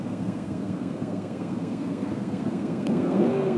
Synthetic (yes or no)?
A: yes